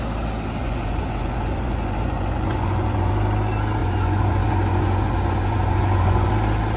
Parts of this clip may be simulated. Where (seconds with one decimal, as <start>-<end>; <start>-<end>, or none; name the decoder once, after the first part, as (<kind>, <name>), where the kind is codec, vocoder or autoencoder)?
0.6-3.1 (vocoder, Vocos); 3.8-6.3